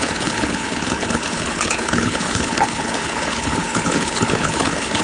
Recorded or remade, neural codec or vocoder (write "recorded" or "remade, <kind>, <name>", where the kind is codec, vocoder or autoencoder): remade, codec, HILCodec